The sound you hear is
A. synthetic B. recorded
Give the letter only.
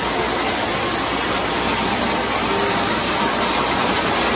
B